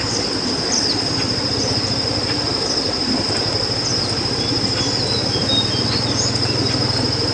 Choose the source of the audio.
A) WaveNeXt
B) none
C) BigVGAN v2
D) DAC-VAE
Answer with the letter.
B